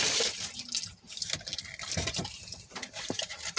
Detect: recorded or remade recorded